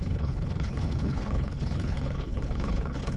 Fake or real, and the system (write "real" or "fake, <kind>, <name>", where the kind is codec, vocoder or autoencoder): fake, codec, HILCodec